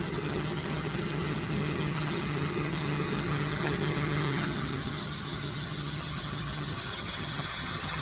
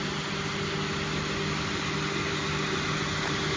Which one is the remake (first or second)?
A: first